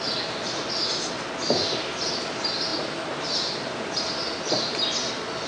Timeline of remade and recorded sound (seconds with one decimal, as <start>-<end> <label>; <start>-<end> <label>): 0.0-2.7 recorded; 2.7-4.9 remade; 4.9-5.5 recorded